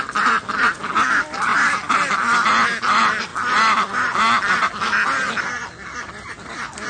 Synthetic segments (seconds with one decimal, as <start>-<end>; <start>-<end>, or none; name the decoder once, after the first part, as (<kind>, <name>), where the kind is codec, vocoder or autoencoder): none